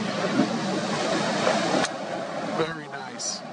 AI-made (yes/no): no